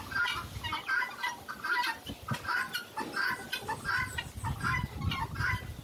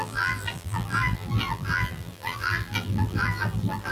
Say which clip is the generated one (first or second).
second